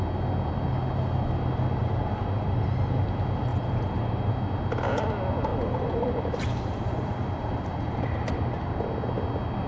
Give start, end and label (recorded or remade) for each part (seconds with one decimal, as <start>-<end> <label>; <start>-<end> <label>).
0.0-1.8 recorded; 1.8-2.6 remade; 2.6-3.5 recorded; 3.5-4.3 remade; 4.3-5.5 recorded; 5.5-8.8 remade; 8.8-9.7 recorded